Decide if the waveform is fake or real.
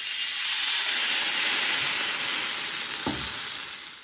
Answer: real